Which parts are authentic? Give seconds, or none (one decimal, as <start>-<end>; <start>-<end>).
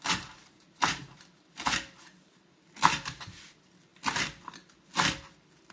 3.9-5.0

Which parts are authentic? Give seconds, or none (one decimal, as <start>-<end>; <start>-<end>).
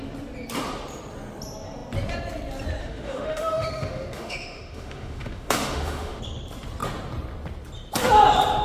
0.0-2.8; 6.2-8.6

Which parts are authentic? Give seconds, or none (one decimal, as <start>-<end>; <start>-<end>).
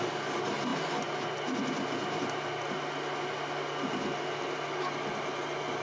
0.0-5.8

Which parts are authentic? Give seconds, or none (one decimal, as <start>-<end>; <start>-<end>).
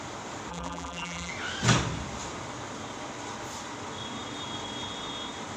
0.0-0.5; 1.3-5.6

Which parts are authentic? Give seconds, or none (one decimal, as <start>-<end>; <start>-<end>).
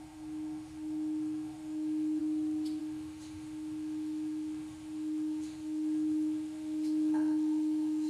2.2-2.8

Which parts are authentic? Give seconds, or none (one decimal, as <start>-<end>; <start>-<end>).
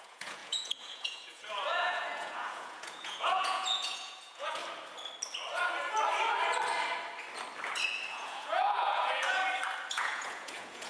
4.6-8.1; 9.4-9.9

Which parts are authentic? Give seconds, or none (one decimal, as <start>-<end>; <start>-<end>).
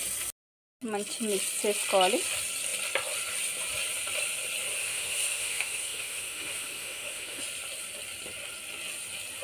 0.0-4.8; 7.4-9.4